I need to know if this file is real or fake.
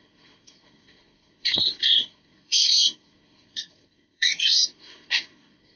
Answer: fake